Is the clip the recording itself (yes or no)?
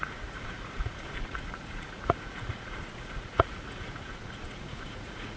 no